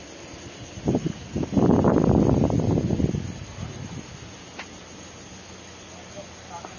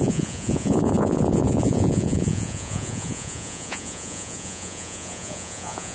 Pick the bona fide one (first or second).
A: first